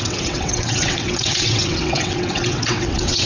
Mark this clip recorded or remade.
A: remade